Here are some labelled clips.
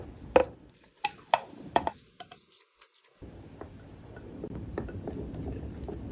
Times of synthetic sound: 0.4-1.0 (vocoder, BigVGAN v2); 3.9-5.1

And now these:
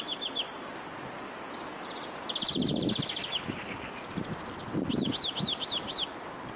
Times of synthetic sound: 0.0-2.7 (vocoder, BigVGAN v2); 3.3-6.6

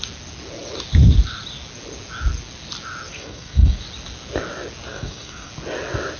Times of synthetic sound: 3.1-3.8 (codec, SNAC); 4.9-5.5